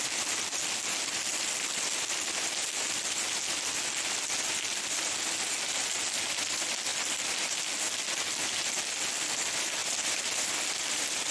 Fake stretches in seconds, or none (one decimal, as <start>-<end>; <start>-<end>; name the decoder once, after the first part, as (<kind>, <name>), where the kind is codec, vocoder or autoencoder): 9.8-10.8 (vocoder, BigVGAN v2)